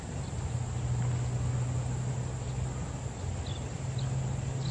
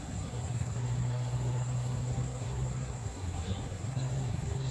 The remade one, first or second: second